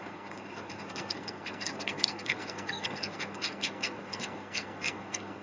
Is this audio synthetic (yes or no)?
yes